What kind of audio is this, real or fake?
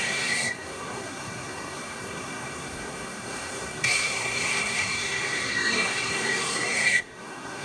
fake